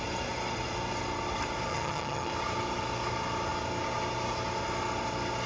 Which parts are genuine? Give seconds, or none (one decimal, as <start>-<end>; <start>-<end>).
0.0-1.7; 2.3-5.5